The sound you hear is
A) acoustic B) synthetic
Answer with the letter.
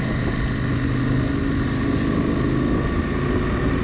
A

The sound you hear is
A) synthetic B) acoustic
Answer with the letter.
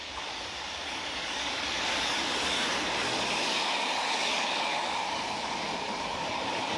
A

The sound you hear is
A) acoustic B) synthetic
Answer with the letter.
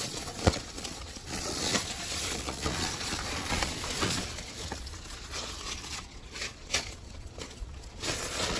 B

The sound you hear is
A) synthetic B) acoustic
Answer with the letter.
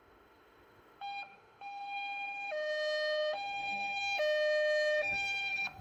A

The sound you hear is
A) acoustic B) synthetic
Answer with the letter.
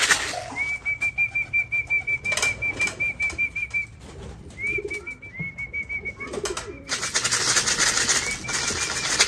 A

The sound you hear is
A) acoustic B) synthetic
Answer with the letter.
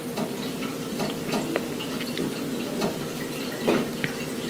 A